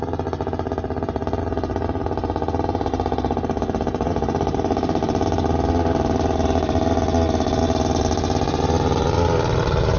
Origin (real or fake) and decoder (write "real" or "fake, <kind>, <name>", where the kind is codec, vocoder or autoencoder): real